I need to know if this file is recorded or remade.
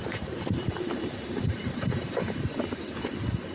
remade